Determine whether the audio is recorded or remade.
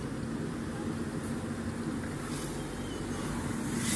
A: recorded